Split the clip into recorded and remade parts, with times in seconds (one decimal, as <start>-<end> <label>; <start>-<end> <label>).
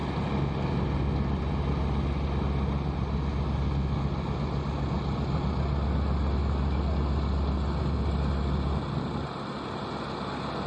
0.0-10.7 recorded